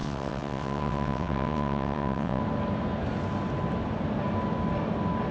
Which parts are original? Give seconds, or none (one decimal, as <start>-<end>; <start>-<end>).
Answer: 2.4-5.3